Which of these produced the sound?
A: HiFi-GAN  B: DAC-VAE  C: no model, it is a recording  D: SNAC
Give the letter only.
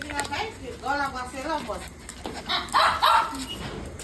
C